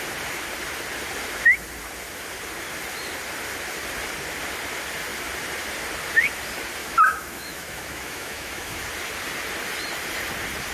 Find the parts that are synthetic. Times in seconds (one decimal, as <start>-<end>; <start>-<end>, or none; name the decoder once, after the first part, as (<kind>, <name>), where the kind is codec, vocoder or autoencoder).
6.8-8.8 (autoencoder, DAC-VAE)